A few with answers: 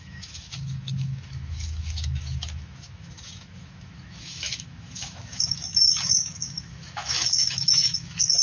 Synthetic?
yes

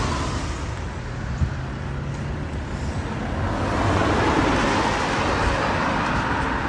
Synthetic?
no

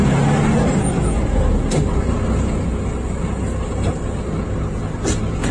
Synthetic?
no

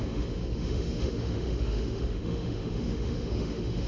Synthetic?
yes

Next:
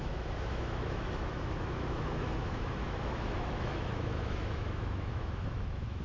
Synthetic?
yes